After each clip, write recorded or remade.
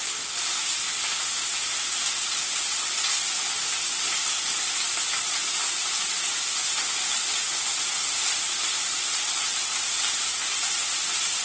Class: recorded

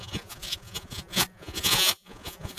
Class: remade